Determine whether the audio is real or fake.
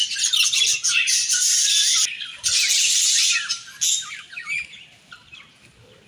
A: real